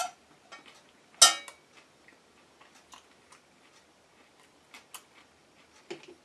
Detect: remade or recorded recorded